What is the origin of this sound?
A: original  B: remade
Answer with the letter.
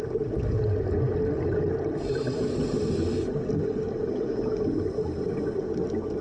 A